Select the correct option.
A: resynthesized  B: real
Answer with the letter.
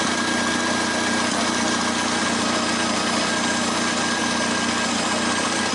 B